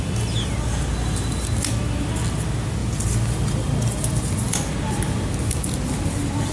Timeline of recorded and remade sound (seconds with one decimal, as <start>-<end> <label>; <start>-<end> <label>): 0.0-6.5 recorded